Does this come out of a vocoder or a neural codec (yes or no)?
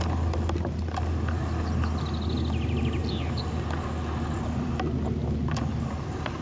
no